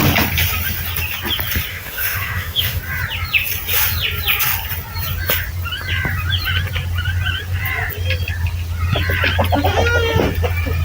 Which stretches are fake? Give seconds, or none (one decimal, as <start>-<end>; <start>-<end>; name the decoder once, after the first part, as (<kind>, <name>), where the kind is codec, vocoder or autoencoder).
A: 1.7-2.8 (autoencoder, DAC-VAE)